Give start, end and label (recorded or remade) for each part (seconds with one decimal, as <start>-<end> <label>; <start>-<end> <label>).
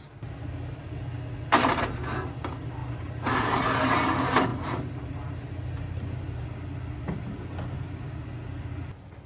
0.0-2.8 recorded; 2.8-3.6 remade; 3.6-4.5 recorded; 4.5-5.3 remade; 5.3-9.3 recorded